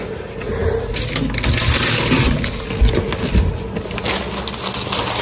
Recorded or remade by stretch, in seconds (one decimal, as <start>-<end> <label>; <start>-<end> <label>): 0.0-5.2 recorded